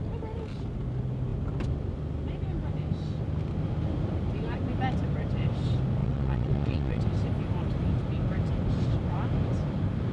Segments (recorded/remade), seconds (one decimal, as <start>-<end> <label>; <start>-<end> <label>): 0.0-6.0 recorded; 6.0-7.0 remade; 7.0-10.1 recorded